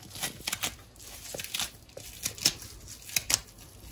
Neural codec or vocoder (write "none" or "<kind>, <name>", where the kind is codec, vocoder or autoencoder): none